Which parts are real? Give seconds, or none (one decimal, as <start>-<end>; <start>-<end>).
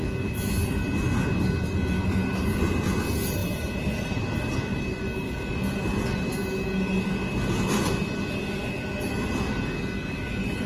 0.0-3.4; 4.3-10.7